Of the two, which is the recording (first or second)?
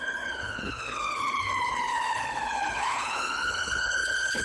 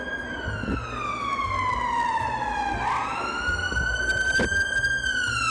second